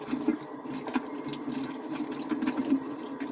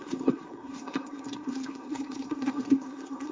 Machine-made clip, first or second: second